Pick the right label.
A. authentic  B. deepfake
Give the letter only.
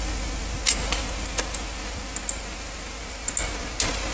A